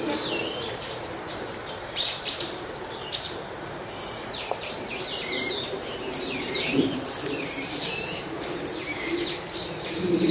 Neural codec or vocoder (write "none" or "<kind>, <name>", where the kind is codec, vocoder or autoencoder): vocoder, BigVGAN v2